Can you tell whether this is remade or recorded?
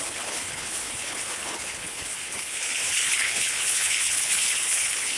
remade